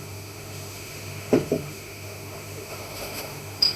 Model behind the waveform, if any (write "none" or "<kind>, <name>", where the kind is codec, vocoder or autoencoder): autoencoder, DAC-VAE